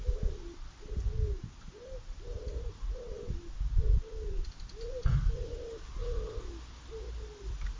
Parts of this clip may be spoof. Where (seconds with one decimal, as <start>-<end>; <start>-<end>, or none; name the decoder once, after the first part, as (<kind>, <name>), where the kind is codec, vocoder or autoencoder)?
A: 0.0-0.4 (vocoder, BigVGAN v2); 4.0-6.0; 7.0-7.8